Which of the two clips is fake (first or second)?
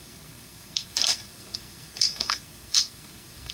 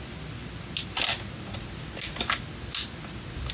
first